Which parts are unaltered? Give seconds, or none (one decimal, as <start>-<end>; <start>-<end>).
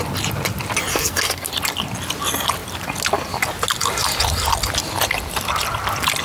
0.0-0.9; 1.5-6.2